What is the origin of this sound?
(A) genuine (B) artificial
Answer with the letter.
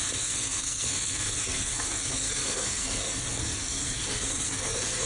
B